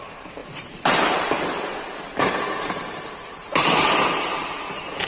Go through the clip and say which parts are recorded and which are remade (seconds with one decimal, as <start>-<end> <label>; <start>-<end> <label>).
0.0-4.3 remade; 4.3-5.1 recorded